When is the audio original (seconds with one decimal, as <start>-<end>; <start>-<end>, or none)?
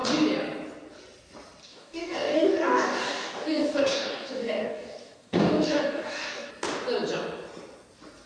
0.0-1.6; 6.5-8.3